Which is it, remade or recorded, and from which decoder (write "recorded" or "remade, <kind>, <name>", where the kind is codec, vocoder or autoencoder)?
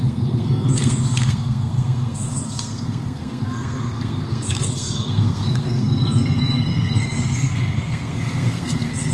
remade, codec, SNAC